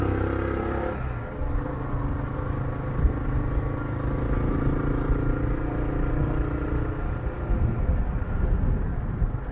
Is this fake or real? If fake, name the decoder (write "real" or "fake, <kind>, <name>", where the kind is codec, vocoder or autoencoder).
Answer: real